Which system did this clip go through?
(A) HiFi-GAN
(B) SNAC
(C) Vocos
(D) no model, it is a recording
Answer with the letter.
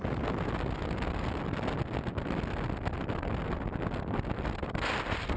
D